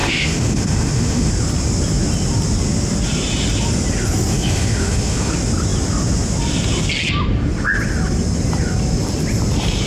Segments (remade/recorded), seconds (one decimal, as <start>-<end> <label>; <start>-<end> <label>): 0.0-1.3 remade; 1.3-4.3 recorded; 4.3-5.3 remade; 5.3-9.9 recorded